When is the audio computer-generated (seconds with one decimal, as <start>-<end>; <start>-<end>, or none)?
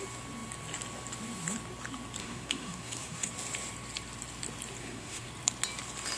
2.2-3.3; 4.8-5.3